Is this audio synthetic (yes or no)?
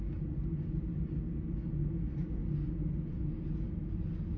no